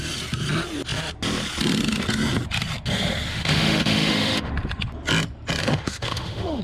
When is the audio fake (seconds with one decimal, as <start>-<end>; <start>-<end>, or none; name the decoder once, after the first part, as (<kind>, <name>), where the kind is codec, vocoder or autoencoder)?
3.3-4.5 (autoencoder, DAC-VAE); 5.6-6.6